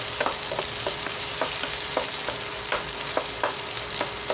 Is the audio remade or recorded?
recorded